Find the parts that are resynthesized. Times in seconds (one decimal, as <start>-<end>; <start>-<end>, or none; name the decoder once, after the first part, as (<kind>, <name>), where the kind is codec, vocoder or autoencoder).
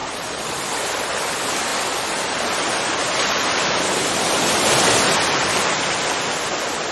none